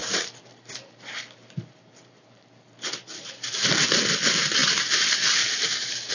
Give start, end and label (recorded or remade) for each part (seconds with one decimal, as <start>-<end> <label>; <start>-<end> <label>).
0.0-3.7 remade; 3.7-4.6 recorded; 4.6-6.1 remade